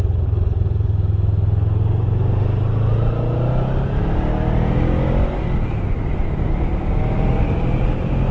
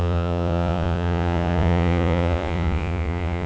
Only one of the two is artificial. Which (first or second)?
second